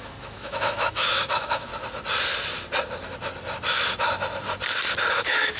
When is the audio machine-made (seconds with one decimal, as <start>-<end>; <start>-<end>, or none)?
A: 0.0-1.7; 5.1-5.6